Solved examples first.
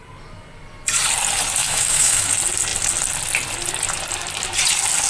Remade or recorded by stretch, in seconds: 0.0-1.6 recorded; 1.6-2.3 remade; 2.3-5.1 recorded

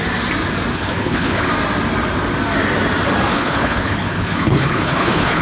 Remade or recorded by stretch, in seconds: 0.0-0.7 recorded; 0.7-1.5 remade; 1.5-3.3 recorded; 3.3-5.4 remade

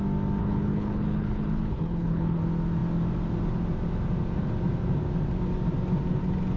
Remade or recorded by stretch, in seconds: 0.0-0.4 recorded; 0.4-2.4 remade; 2.4-6.6 recorded

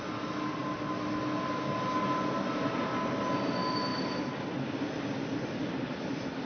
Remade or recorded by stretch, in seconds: 0.0-6.5 recorded

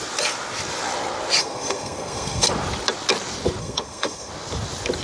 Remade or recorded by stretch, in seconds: 0.0-1.4 recorded; 1.4-2.5 remade; 2.5-3.6 recorded; 3.6-4.3 remade; 4.3-5.0 recorded

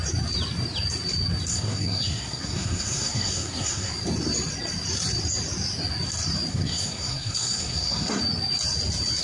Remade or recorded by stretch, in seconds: 0.0-1.5 recorded; 1.5-3.9 remade; 3.9-6.5 recorded; 6.5-8.2 remade; 8.2-9.2 recorded